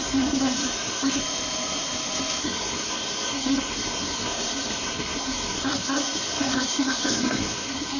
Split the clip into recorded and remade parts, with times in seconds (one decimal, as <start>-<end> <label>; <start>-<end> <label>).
0.0-1.2 remade; 1.2-2.4 recorded; 2.4-8.0 remade